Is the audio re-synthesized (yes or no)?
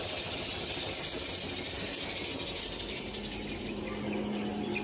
no